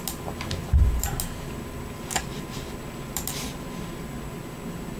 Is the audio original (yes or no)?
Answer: yes